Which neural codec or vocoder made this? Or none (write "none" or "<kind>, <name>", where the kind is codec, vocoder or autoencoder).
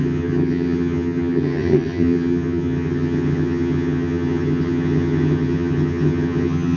vocoder, HiFi-GAN